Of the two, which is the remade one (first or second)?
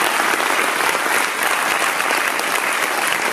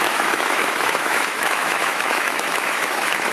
second